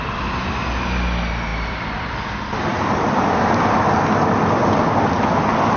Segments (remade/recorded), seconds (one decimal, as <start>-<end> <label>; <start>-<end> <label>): 0.0-1.5 recorded; 1.5-2.1 remade; 2.1-2.7 recorded; 2.7-3.3 remade; 3.3-5.8 recorded